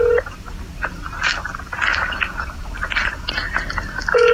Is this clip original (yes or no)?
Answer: yes